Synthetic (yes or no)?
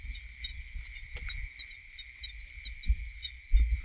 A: no